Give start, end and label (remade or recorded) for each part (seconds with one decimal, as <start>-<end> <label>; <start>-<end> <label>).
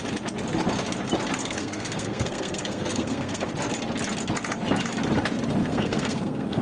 0.0-1.4 recorded; 1.4-3.5 remade; 3.5-5.6 recorded; 5.6-6.6 remade